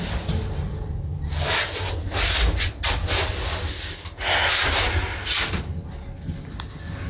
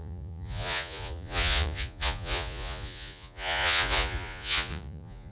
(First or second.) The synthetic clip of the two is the second